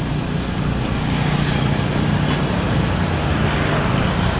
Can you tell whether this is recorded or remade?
recorded